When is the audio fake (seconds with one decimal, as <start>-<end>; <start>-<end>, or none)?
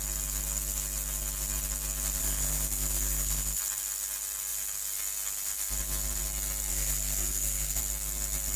2.2-3.6; 6.7-7.8